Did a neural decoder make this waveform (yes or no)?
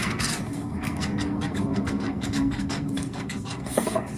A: yes